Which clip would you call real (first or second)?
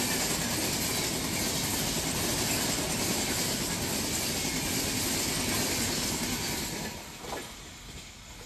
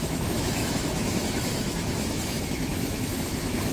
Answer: first